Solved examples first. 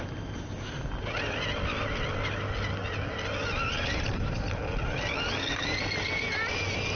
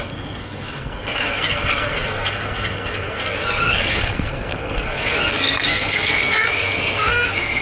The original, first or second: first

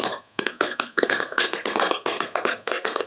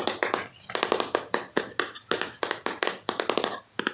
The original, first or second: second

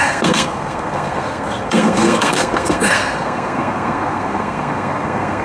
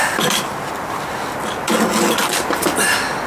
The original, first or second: second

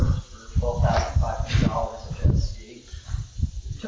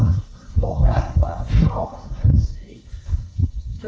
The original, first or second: first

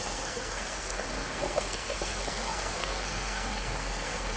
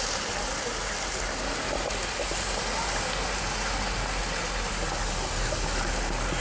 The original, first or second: second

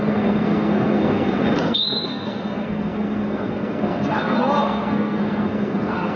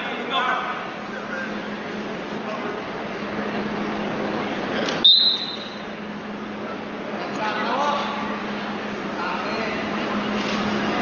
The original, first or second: second